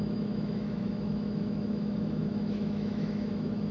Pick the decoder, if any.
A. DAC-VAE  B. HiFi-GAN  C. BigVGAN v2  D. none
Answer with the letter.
A